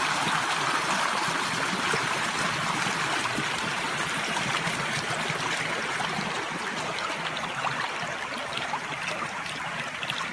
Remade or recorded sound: recorded